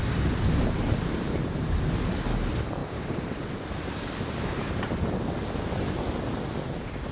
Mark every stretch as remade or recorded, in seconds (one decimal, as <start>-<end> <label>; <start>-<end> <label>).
0.0-2.1 remade; 2.1-2.8 recorded; 2.8-4.7 remade; 4.7-7.1 recorded